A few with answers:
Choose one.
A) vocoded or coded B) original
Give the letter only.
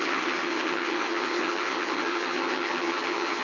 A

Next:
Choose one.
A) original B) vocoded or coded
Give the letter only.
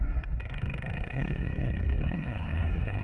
B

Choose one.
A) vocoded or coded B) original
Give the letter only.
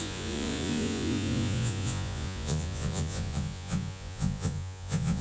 A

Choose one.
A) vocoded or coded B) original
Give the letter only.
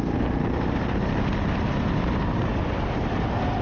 B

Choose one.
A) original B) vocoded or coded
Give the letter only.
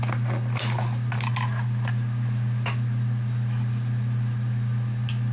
A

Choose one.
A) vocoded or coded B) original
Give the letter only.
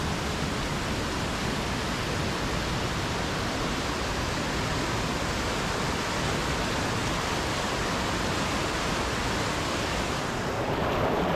B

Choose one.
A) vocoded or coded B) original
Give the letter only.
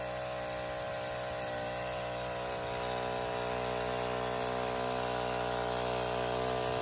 B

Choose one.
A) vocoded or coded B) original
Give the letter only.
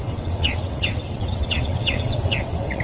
A